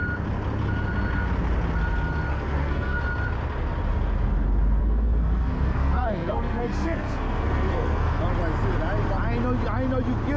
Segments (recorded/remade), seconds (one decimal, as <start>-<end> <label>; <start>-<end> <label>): 0.0-2.3 recorded; 2.3-3.0 remade; 3.0-4.8 recorded; 4.8-8.2 remade; 8.2-10.4 recorded